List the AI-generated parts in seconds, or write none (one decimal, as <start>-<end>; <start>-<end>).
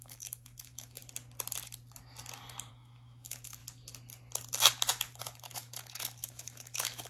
0.0-1.0; 2.7-3.6; 4.9-7.1